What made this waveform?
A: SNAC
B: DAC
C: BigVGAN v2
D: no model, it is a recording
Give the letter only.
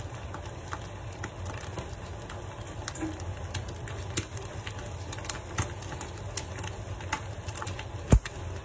D